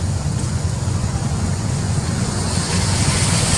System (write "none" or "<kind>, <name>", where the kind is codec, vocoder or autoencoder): vocoder, Vocos